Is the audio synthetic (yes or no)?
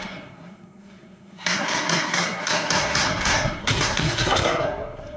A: yes